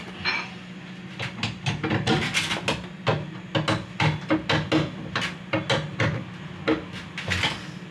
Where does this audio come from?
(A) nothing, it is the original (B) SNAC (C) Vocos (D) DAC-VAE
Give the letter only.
A